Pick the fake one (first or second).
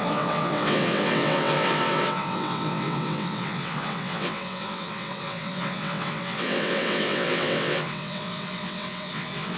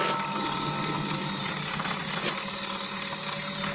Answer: first